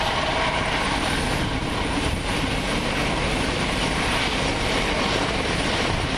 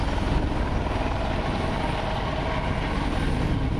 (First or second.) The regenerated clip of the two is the first